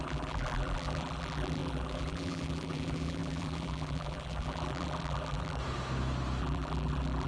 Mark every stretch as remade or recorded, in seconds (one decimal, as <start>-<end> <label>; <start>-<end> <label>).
0.0-5.6 remade; 5.6-6.4 recorded; 6.4-7.3 remade